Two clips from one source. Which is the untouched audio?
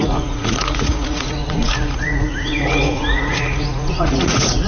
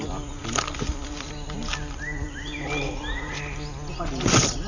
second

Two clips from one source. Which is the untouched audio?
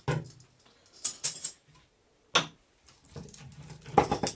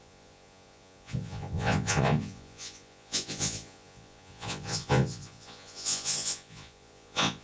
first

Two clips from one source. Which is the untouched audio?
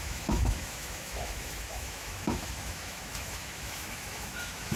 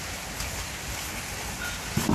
second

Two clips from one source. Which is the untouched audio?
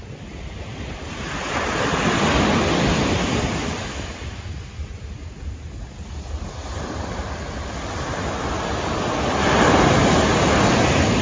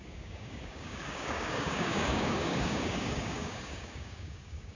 first